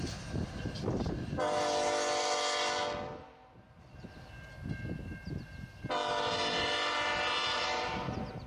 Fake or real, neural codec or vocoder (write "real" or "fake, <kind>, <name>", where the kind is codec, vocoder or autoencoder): real